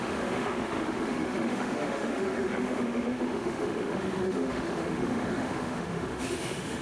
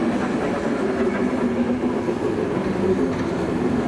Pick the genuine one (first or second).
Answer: second